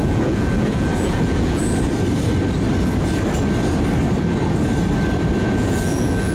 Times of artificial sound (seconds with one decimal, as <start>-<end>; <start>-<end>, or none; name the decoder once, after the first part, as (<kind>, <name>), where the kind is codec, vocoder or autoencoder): 0.0-1.6 (vocoder, Vocos); 5.4-6.3

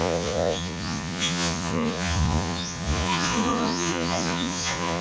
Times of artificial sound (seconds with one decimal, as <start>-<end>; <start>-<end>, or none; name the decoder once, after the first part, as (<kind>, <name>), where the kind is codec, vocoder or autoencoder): 0.0-5.0 (vocoder, Vocos)